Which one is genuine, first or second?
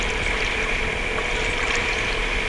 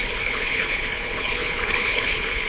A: first